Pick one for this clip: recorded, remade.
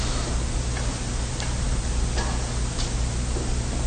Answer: recorded